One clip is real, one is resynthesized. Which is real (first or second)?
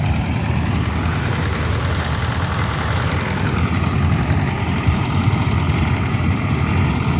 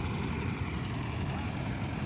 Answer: first